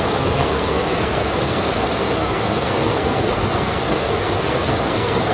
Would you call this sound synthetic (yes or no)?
yes